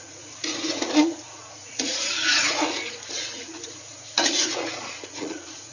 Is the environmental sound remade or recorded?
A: remade